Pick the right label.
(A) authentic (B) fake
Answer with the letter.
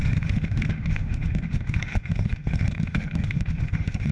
B